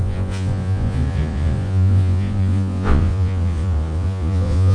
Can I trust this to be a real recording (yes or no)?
no